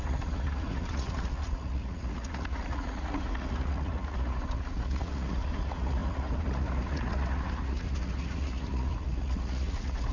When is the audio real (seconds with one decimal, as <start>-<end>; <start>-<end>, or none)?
none